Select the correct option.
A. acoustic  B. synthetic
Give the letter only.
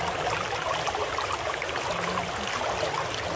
A